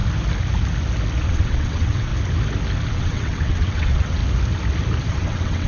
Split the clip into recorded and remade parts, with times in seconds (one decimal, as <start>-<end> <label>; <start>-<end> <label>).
0.0-1.2 recorded; 1.2-2.1 remade; 2.1-2.9 recorded; 2.9-4.2 remade; 4.2-5.1 recorded; 5.1-5.7 remade